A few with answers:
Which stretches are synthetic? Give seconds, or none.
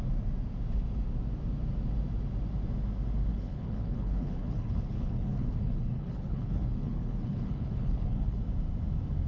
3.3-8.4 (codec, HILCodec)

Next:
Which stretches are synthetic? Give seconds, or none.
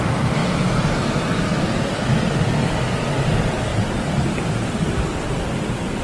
0.0-0.4 (vocoder, BigVGAN v2); 3.3-6.0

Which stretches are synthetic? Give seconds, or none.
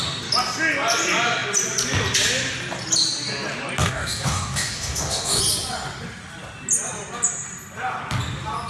3.8-5.4 (codec, DAC)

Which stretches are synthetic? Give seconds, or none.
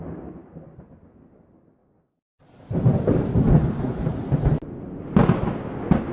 none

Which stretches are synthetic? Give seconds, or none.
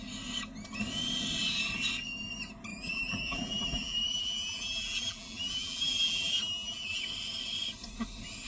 2.7-7.0 (vocoder, BigVGAN v2)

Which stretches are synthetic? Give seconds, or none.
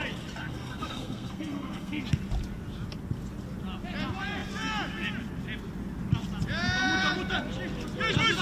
0.4-2.0 (codec, SNAC)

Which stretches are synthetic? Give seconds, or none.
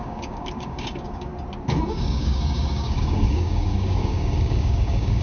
0.0-1.3 (codec, DAC); 1.9-5.2